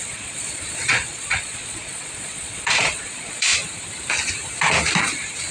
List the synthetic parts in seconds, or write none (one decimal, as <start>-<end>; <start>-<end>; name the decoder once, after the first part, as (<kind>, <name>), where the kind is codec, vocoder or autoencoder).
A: 0.0-3.5 (vocoder, Vocos); 5.0-5.5